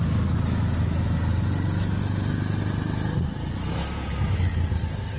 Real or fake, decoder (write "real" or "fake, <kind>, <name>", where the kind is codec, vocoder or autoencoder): real